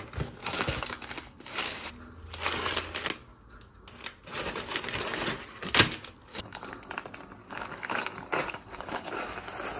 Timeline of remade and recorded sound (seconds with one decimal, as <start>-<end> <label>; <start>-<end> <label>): 0.0-0.4 recorded; 0.4-1.9 remade; 1.9-6.3 recorded; 6.3-6.9 remade; 6.9-7.4 recorded; 7.4-9.4 remade; 9.4-9.8 recorded